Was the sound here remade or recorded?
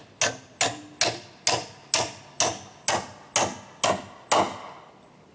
recorded